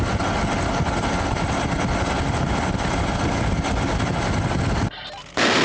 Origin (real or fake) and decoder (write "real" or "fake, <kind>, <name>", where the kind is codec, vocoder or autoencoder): real